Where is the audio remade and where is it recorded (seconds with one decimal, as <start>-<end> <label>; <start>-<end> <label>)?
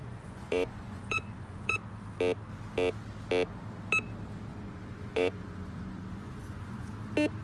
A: 0.0-1.8 remade; 1.8-4.5 recorded; 4.5-6.9 remade; 6.9-7.4 recorded